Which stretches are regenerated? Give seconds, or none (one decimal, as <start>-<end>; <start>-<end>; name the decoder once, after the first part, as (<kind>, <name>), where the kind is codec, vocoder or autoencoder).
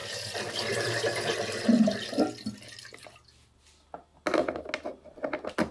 0.0-3.1 (vocoder, BigVGAN v2)